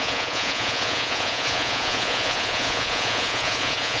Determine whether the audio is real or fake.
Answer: fake